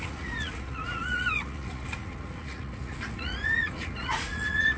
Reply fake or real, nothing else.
fake